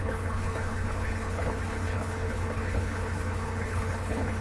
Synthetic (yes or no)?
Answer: yes